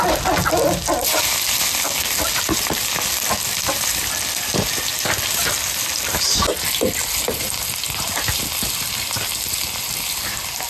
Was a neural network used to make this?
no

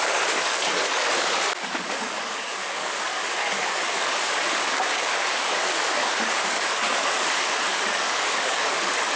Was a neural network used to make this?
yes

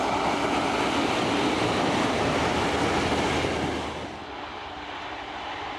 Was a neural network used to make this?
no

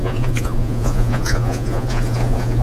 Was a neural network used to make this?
yes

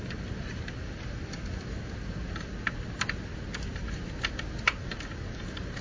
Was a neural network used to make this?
no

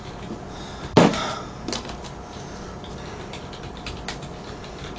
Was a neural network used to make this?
no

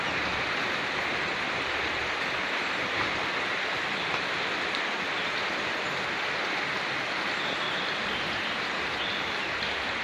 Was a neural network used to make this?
no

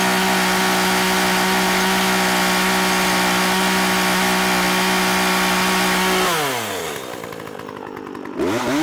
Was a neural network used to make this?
no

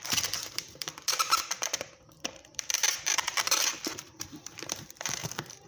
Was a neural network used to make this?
yes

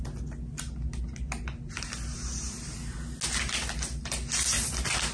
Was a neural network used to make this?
no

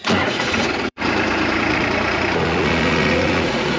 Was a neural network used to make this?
yes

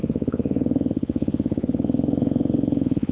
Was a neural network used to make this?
yes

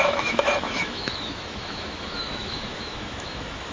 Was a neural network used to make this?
yes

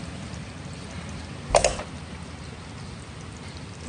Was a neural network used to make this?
no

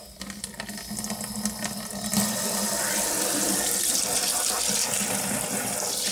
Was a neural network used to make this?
no